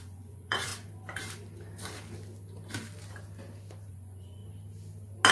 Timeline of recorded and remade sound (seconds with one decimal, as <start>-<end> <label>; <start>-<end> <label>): 0.0-0.7 remade; 0.7-3.9 recorded; 3.9-4.4 remade; 4.4-5.3 recorded